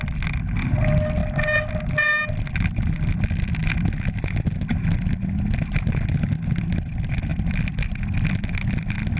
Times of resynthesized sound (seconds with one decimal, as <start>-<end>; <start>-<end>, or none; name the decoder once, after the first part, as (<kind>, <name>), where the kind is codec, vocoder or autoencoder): none